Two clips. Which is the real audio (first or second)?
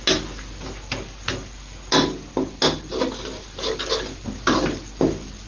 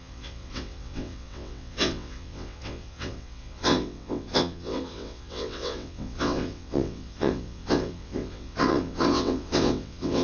first